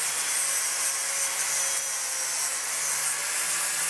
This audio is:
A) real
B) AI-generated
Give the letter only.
A